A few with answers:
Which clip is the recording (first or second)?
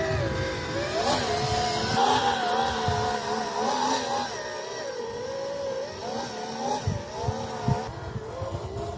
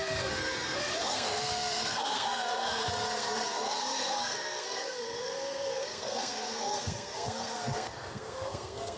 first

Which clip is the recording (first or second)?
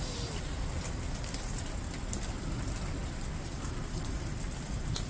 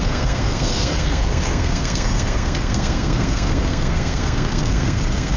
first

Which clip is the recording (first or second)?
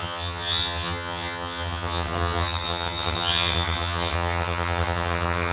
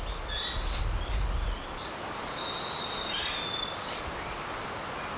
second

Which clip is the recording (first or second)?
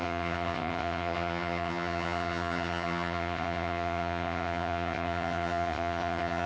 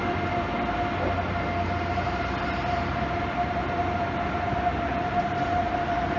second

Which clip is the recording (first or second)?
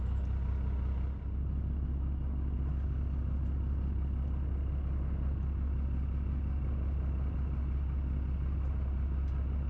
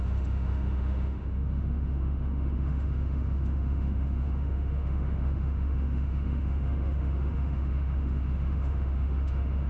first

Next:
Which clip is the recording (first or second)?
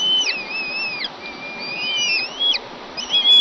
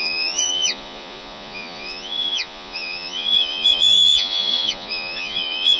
first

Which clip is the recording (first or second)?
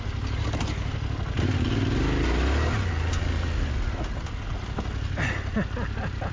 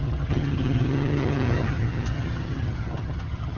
first